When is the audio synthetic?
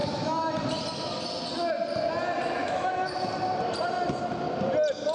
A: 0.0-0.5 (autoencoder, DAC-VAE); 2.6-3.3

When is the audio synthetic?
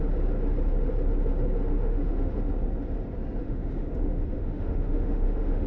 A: 1.7-2.4 (autoencoder, DAC-VAE); 3.4-5.7